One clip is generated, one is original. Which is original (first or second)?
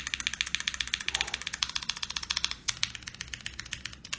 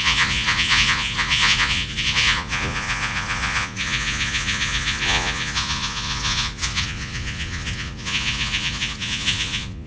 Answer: first